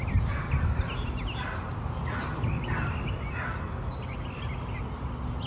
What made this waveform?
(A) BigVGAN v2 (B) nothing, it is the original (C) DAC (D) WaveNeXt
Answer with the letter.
B